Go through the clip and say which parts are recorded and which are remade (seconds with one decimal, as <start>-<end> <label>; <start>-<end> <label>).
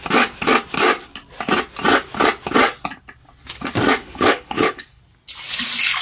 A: 0.0-4.0 recorded; 4.0-5.0 remade; 5.0-6.0 recorded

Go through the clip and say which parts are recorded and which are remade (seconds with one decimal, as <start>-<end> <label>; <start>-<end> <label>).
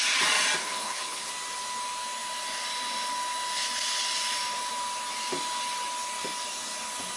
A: 0.0-0.6 recorded; 0.6-1.3 remade; 1.3-7.2 recorded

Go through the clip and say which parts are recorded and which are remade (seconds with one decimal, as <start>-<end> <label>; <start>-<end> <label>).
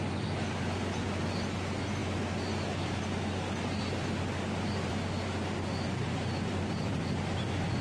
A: 0.0-7.8 recorded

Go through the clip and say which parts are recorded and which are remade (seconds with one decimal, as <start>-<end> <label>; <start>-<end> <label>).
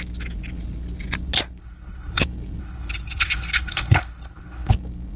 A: 0.0-1.6 recorded; 1.6-2.2 remade; 2.2-2.6 recorded; 2.6-4.7 remade; 4.7-5.2 recorded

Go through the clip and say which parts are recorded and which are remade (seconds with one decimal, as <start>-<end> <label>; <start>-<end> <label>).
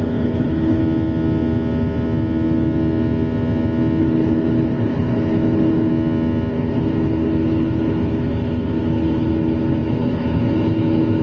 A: 0.0-0.8 remade; 0.8-4.0 recorded; 4.0-5.9 remade; 5.9-6.5 recorded; 6.5-11.2 remade